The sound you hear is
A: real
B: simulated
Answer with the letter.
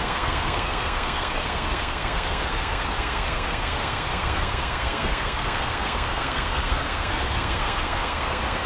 B